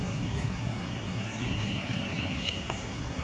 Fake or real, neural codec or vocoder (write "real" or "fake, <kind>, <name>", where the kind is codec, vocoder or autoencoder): fake, codec, SNAC